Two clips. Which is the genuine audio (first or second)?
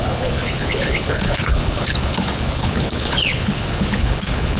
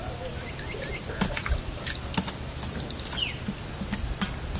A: second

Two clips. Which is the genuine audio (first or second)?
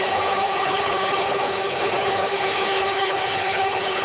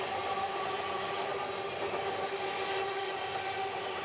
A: second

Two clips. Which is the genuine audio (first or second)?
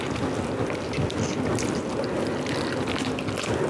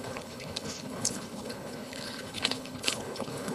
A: first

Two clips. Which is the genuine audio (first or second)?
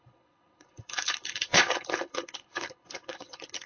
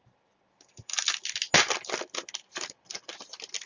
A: second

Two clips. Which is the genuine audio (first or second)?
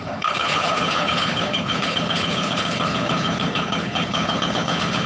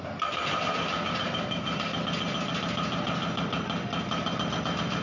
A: second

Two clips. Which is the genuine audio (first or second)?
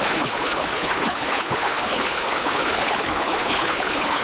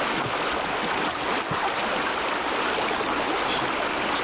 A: second